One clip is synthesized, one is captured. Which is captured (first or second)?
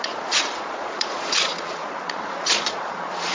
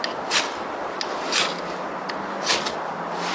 second